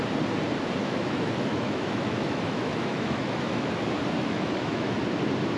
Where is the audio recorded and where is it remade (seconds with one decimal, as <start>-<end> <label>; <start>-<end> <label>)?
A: 0.0-0.8 recorded; 0.8-3.7 remade; 3.7-4.2 recorded; 4.2-5.0 remade; 5.0-5.6 recorded